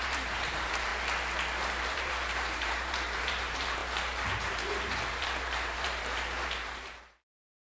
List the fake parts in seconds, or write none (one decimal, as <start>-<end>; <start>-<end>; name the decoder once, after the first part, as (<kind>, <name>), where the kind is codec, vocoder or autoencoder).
0.0-0.9 (vocoder, BigVGAN v2); 1.8-3.8; 4.3-7.6